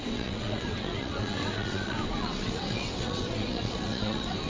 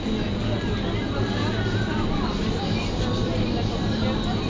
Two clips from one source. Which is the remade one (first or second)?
first